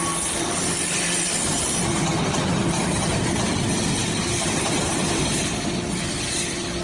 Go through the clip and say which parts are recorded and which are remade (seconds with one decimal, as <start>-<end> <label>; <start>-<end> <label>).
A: 0.0-4.0 recorded; 4.0-4.9 remade; 4.9-6.8 recorded